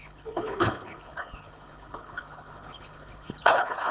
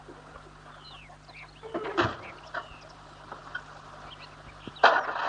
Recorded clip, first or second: second